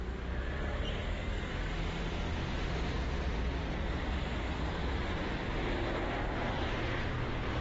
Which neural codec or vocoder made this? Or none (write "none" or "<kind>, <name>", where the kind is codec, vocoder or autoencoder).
none